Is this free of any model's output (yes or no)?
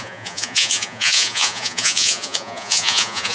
no